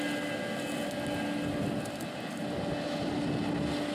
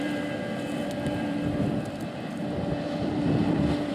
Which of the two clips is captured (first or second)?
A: first